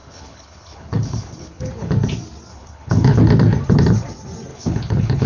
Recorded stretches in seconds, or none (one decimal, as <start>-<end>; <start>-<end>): 1.9-2.5; 3.2-4.5